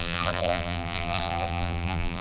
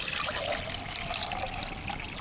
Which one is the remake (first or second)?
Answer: first